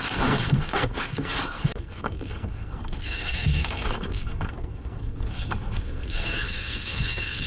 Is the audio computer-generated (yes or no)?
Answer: yes